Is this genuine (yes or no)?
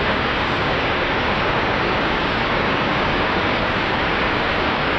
no